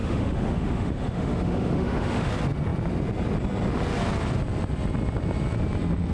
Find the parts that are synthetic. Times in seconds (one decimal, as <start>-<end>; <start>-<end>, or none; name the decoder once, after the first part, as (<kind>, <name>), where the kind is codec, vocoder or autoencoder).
0.0-2.3 (autoencoder, DAC-VAE)